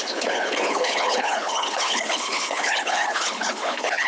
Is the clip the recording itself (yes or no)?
no